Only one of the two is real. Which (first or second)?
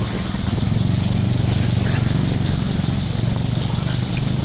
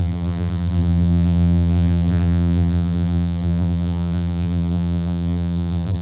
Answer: first